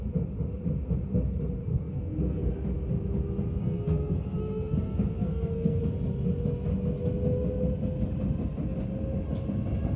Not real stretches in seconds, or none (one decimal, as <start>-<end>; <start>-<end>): 1.6-2.5; 3.6-5.8